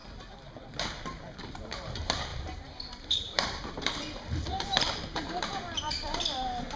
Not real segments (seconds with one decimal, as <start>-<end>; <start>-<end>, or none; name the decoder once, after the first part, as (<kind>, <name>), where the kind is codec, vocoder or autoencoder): 2.3-6.2 (vocoder, BigVGAN v2)